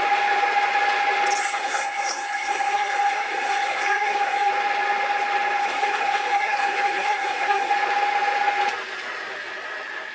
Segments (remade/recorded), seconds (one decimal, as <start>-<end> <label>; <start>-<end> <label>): 0.0-1.4 recorded; 1.4-4.5 remade; 4.5-5.6 recorded; 5.6-7.7 remade; 7.7-10.1 recorded